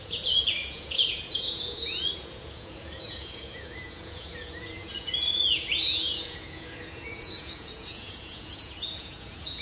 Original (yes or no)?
no